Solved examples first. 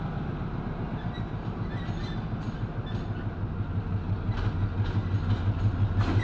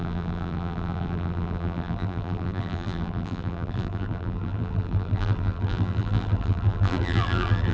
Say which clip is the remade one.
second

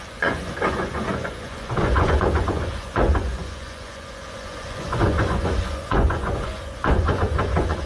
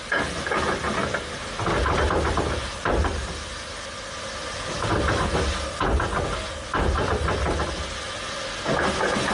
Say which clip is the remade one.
first